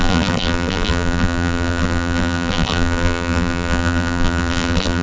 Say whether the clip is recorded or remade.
remade